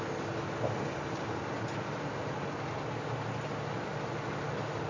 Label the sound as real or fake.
real